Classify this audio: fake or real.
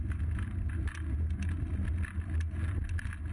real